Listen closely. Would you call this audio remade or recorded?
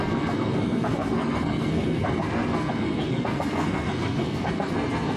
remade